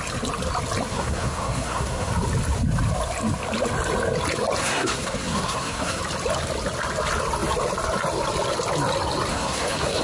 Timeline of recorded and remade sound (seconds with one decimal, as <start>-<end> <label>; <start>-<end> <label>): 0.0-0.9 recorded; 0.9-2.1 remade; 2.1-4.6 recorded; 4.6-6.0 remade; 6.0-9.3 recorded; 9.3-10.0 remade